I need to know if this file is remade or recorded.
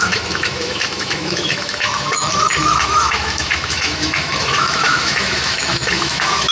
remade